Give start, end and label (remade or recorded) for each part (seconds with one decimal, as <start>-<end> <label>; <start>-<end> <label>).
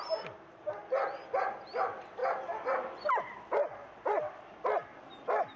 0.0-5.6 recorded